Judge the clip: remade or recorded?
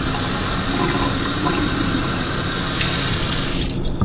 recorded